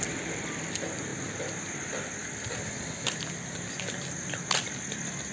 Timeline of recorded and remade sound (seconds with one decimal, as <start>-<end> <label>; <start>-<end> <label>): 0.0-5.3 recorded